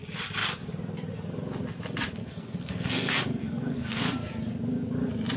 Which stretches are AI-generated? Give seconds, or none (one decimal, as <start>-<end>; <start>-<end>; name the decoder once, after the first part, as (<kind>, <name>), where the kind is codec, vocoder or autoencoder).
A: 2.2-4.0 (codec, SNAC)

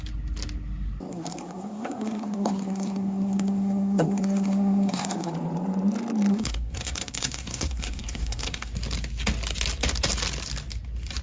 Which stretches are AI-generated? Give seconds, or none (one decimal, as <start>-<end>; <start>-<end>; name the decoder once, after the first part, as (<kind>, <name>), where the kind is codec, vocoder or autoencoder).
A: 1.1-5.3 (codec, SNAC); 6.3-8.7

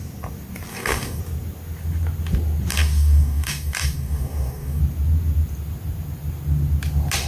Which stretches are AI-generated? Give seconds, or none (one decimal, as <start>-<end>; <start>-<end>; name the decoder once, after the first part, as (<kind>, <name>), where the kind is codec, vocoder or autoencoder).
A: 0.7-1.2 (codec, DAC); 2.7-4.8

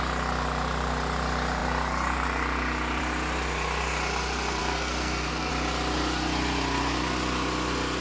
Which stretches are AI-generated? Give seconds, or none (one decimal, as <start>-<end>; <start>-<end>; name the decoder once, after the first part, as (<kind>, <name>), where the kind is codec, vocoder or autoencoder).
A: 4.6-5.5 (codec, SNAC)

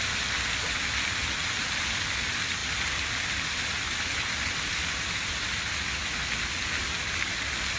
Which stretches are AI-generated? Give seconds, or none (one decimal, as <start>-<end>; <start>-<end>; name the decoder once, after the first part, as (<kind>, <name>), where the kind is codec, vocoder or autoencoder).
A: none

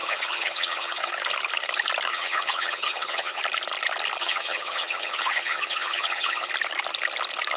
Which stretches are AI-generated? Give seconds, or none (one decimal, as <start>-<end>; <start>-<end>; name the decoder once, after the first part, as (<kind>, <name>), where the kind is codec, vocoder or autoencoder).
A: 0.0-1.1 (vocoder, HiFi-GAN); 2.1-3.4; 4.2-6.5

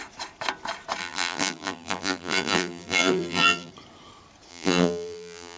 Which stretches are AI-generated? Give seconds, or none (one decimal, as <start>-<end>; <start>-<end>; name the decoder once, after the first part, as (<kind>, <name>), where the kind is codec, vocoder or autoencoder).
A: 1.0-3.7 (vocoder, BigVGAN v2); 4.5-5.6